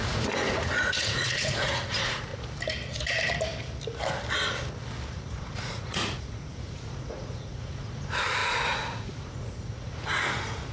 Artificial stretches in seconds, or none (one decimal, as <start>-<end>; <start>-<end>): 0.0-2.3; 5.1-10.7